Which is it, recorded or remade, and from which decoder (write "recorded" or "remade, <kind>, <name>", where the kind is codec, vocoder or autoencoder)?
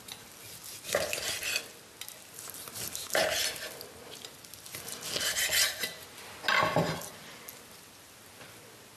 recorded